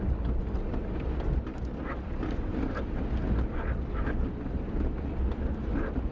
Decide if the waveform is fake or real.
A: real